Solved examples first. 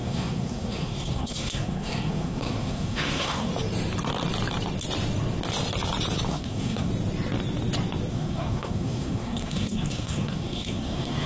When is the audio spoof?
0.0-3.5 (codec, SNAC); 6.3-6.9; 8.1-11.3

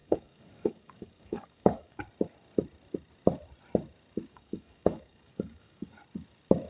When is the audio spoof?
0.0-2.0 (codec, DAC); 4.3-6.0

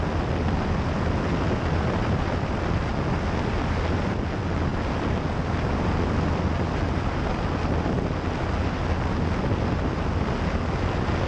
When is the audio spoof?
none

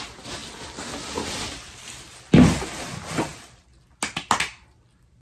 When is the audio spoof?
none

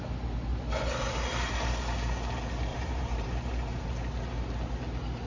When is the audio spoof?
0.5-1.5 (vocoder, BigVGAN v2); 2.7-3.8

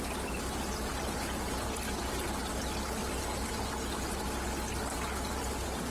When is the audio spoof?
3.0-3.5 (vocoder, BigVGAN v2)

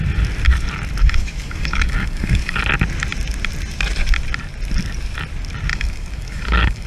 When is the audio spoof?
1.0-2.6 (codec, DAC); 5.7-6.9